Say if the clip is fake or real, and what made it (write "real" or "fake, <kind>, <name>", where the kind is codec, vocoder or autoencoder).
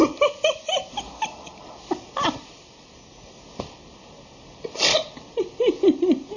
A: real